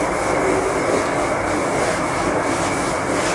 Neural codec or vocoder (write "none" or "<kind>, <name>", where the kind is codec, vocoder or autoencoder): none